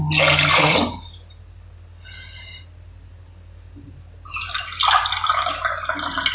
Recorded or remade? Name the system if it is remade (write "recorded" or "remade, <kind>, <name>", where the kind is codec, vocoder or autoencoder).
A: recorded